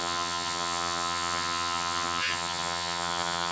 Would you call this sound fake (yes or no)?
yes